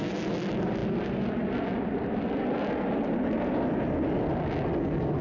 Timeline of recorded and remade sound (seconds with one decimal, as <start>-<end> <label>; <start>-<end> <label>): 0.0-5.2 recorded